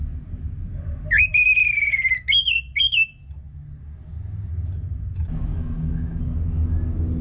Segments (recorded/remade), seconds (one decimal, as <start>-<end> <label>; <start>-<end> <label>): 0.0-5.5 recorded; 5.5-6.2 remade; 6.2-7.2 recorded